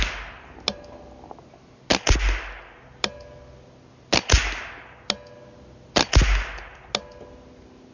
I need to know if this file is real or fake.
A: real